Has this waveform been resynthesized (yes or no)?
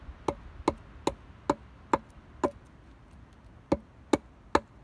no